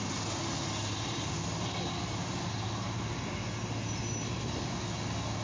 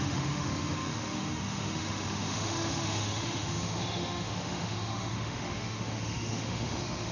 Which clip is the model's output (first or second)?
second